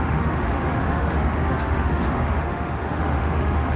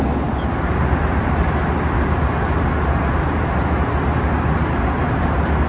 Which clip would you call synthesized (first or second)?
first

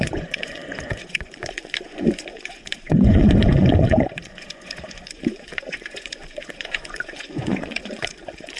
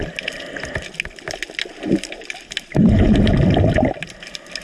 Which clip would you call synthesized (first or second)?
first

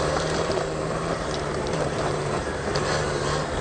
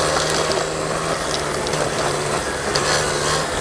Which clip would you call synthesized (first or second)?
first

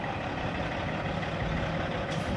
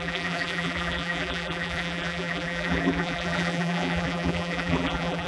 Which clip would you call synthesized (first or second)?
second